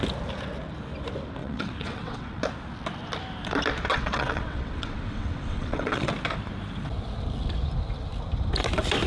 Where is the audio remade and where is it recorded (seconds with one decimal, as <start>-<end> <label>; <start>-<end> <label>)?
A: 0.0-1.4 recorded; 1.4-2.4 remade; 2.4-3.9 recorded; 3.9-6.1 remade; 6.1-9.1 recorded